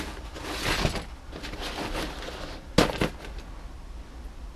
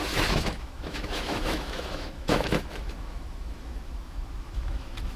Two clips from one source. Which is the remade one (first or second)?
second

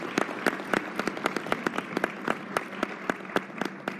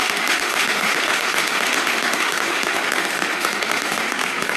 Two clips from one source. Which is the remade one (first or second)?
second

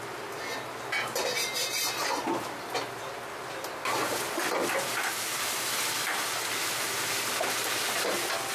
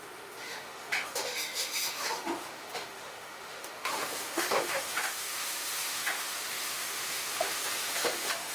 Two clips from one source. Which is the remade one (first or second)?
second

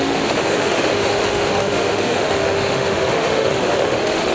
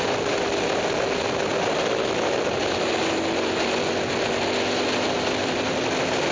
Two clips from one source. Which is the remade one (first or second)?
first